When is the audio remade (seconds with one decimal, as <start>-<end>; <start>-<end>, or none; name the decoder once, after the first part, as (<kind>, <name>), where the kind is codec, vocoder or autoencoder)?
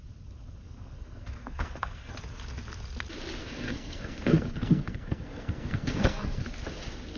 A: 0.6-2.1 (codec, SNAC); 3.4-6.4